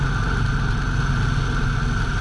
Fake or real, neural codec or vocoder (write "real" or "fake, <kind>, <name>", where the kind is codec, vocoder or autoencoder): real